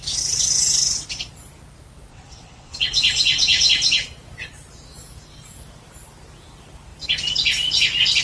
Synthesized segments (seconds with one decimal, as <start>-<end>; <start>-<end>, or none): 2.1-3.7